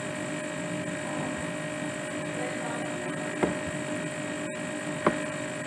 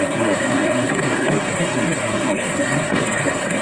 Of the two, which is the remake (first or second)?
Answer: second